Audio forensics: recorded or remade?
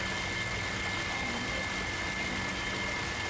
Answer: recorded